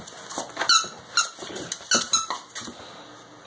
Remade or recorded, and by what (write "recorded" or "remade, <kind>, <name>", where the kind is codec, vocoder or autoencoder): recorded